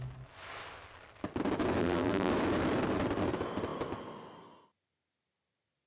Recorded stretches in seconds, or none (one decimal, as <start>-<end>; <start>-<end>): 0.0-1.8; 2.3-5.9